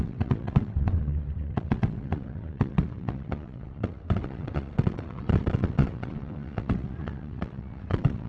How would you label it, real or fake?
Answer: fake